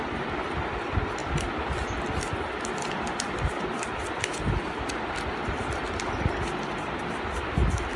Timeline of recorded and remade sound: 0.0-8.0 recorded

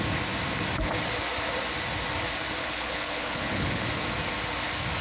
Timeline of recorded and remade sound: 0.0-2.6 recorded; 2.6-3.8 remade; 3.8-5.0 recorded

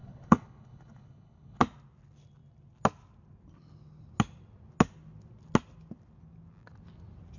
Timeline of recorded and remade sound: 0.0-1.6 remade; 1.6-7.4 recorded

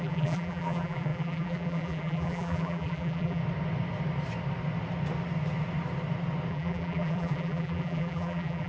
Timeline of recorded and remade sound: 0.0-3.4 remade; 3.4-6.5 recorded; 6.5-8.7 remade

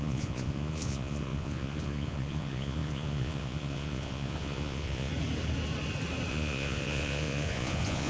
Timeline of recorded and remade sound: 0.0-5.1 remade; 5.1-6.3 recorded; 6.3-8.1 remade

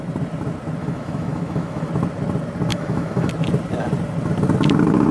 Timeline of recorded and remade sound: 0.0-0.8 recorded; 0.8-1.9 remade; 1.9-2.7 recorded; 2.7-3.3 remade; 3.3-5.1 recorded